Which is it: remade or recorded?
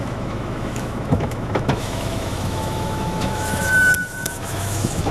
remade